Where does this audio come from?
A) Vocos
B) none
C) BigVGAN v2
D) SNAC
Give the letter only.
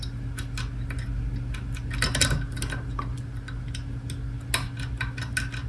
B